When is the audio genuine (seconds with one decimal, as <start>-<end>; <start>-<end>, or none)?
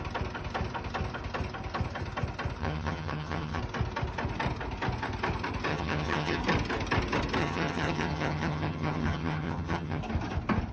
0.0-2.6; 3.6-5.7; 6.4-7.4; 10.0-10.7